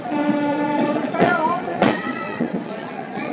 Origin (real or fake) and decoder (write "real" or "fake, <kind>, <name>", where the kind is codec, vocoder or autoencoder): fake, vocoder, Vocos